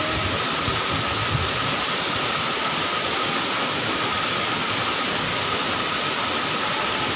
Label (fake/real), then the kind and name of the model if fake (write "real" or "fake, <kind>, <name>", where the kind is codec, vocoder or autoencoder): real